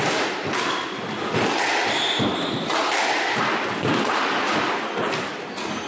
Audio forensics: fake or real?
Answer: real